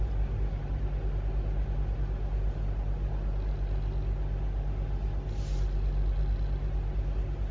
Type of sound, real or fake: real